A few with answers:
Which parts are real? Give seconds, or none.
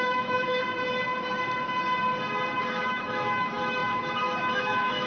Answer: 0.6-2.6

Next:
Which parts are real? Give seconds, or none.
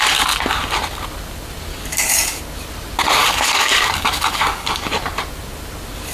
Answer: 0.0-1.7; 2.4-3.2; 4.9-6.1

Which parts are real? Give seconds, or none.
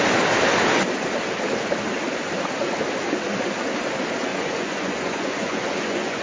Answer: 0.0-4.3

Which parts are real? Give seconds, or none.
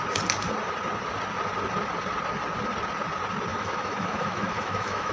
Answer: 0.0-3.5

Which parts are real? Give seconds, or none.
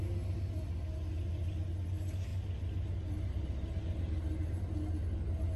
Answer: 0.0-5.6